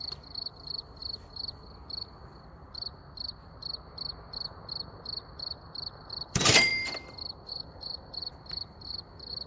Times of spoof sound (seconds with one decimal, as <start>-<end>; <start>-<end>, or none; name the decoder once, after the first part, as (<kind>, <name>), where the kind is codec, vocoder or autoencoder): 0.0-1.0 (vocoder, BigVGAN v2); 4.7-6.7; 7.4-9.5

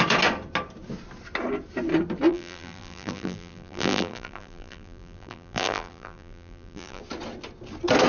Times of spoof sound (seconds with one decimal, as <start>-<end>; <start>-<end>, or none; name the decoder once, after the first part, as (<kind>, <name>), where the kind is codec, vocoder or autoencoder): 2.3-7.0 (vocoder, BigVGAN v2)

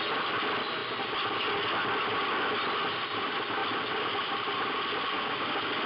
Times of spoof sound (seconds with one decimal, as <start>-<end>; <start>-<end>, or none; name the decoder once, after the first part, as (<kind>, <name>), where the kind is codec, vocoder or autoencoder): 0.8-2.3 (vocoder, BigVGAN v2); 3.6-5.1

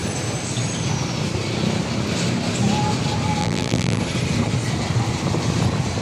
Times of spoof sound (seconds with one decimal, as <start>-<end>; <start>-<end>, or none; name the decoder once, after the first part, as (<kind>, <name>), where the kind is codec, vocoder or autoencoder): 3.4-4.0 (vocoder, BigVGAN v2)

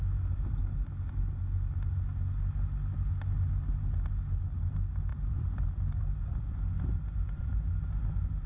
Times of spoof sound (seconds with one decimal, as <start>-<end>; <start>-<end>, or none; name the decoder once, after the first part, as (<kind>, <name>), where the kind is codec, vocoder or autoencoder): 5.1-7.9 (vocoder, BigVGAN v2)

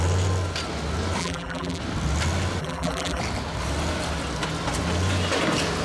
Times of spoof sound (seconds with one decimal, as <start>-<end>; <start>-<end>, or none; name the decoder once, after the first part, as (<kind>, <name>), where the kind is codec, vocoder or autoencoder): 1.2-1.8 (vocoder, BigVGAN v2); 2.6-3.2

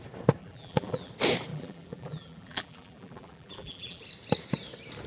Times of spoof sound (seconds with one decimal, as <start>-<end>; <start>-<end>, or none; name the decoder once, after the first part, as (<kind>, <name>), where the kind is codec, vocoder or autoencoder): 0.4-1.1 (vocoder, BigVGAN v2); 1.5-4.0